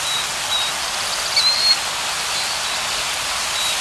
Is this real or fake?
fake